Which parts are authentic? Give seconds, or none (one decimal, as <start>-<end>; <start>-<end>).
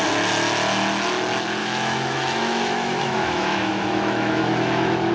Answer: 0.0-1.6